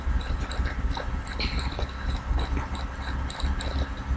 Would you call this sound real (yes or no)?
yes